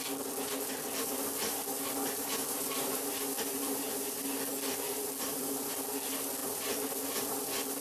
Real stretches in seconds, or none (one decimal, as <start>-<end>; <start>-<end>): 0.0-2.4; 3.1-7.8